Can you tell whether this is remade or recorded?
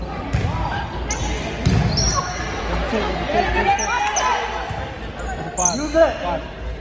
recorded